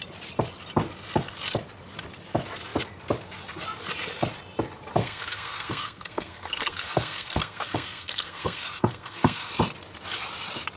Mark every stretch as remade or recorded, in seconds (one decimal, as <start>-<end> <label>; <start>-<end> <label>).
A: 0.0-5.0 recorded; 5.0-9.5 remade; 9.5-10.8 recorded